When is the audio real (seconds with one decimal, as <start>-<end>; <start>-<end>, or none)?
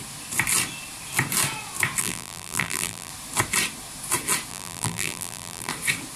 0.0-2.0; 3.1-4.5; 5.7-6.2